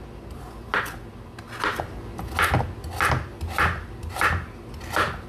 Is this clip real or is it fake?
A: real